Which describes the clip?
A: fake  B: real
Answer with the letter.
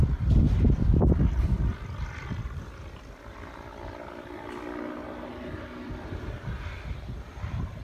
B